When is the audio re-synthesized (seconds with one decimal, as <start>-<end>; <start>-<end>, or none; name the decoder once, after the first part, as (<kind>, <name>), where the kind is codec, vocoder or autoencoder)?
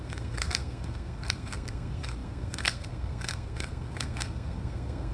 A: 0.0-5.1 (codec, SNAC)